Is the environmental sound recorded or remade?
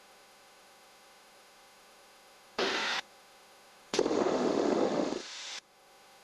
remade